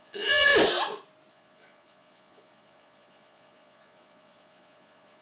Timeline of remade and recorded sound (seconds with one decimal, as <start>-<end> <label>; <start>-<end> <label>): 0.0-0.5 remade; 0.5-1.3 recorded; 1.3-5.2 remade